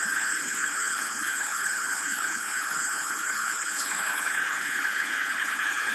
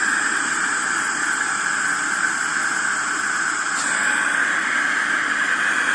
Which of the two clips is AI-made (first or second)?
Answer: first